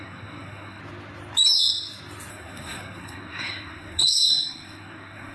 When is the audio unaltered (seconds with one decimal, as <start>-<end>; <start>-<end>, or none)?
0.8-2.3